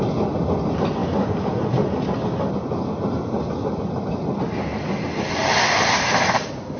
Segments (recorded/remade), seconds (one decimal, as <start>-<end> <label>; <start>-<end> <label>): 0.0-6.8 recorded